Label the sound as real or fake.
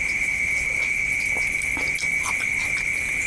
real